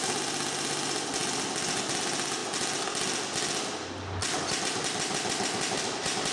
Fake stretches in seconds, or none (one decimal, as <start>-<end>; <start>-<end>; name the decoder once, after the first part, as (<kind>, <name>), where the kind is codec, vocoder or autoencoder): none